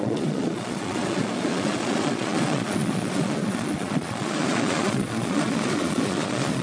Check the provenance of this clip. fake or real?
fake